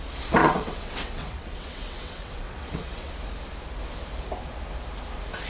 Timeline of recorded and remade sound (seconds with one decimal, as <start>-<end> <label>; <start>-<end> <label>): 0.0-0.4 recorded; 0.4-3.1 remade; 3.1-5.5 recorded